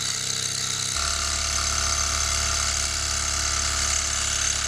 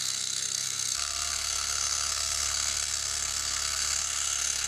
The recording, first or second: first